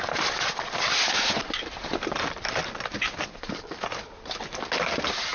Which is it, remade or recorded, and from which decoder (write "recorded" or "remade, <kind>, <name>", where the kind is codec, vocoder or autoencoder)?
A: recorded